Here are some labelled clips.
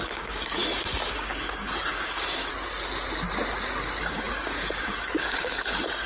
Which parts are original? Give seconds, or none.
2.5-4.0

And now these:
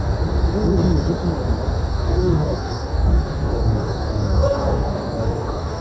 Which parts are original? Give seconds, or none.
0.0-1.9

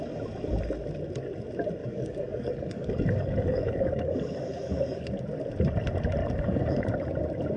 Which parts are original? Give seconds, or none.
0.0-1.8; 5.1-6.2; 6.8-7.6

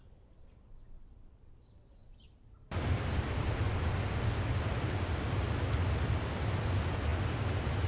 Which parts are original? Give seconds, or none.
0.0-7.9